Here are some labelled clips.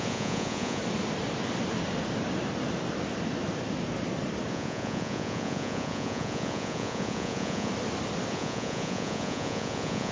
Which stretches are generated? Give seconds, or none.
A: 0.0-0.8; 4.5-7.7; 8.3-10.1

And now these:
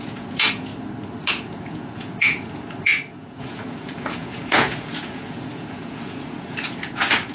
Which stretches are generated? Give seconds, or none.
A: 0.0-0.7; 1.3-7.3

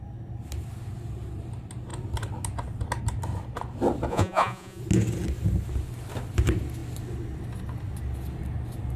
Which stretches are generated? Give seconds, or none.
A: 4.1-4.8

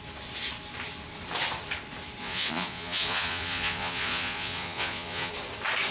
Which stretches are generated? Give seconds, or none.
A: 2.2-5.3

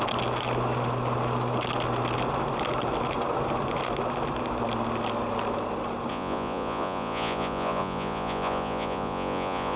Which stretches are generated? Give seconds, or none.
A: 6.1-9.8

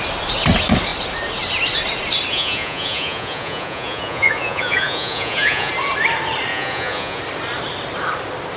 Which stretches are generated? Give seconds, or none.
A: 2.3-5.7; 6.5-7.2

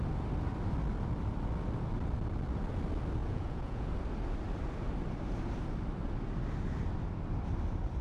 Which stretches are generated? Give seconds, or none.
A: 3.2-3.9

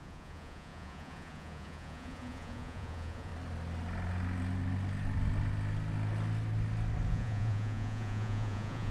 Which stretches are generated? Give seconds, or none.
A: 0.0-3.3; 7.1-8.9